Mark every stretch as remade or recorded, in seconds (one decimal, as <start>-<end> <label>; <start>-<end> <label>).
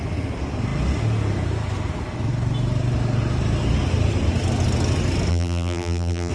0.0-5.3 recorded; 5.3-6.3 remade